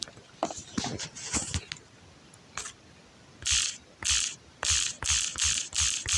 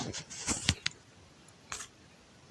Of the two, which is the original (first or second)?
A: first